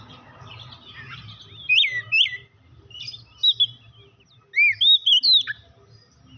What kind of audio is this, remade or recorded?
recorded